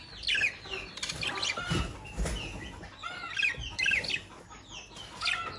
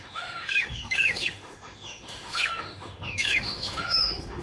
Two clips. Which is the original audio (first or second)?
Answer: first